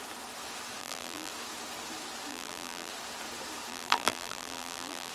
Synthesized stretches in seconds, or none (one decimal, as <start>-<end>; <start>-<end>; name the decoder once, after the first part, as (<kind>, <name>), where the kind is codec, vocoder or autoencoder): 0.8-1.3 (vocoder, BigVGAN v2); 2.3-2.9; 3.7-5.1